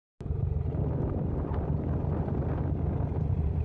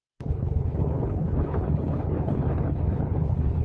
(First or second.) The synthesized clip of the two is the second